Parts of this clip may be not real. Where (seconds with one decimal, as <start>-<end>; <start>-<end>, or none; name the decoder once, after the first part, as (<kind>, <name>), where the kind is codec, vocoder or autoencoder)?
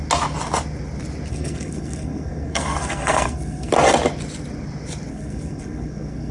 1.3-3.7 (codec, SNAC); 5.1-6.3